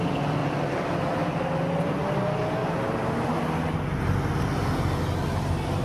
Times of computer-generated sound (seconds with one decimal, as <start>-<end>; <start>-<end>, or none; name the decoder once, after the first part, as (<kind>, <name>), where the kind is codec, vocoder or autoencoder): 0.4-1.7 (vocoder, BigVGAN v2); 2.6-3.7